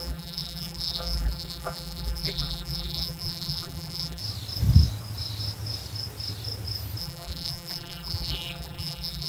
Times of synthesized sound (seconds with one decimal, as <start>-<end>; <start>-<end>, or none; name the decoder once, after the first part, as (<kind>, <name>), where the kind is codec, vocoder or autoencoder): 0.0-4.2 (vocoder, BigVGAN v2); 7.0-9.3